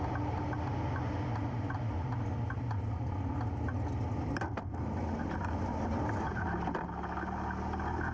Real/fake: real